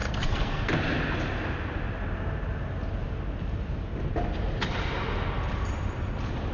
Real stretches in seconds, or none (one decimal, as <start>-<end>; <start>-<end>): 0.7-6.5